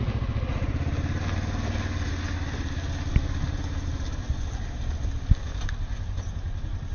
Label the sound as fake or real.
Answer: real